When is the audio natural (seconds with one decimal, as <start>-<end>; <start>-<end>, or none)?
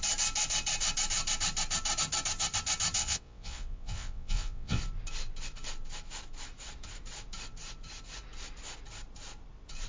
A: 0.0-3.0; 4.8-9.9